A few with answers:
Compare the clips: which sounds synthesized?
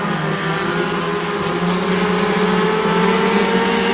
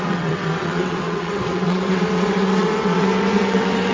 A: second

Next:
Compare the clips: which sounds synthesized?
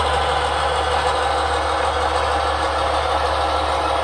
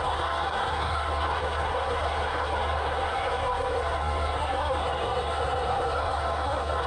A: second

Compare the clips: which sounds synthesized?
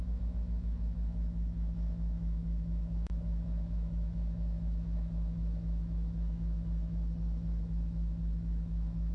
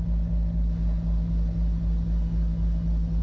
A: first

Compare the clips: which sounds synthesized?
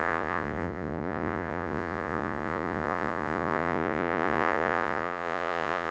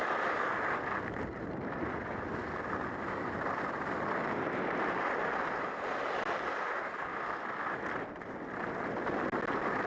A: first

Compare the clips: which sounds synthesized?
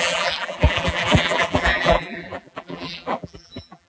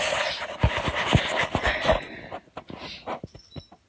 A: first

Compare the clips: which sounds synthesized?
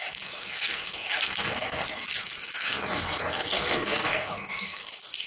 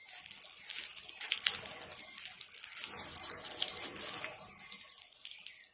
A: first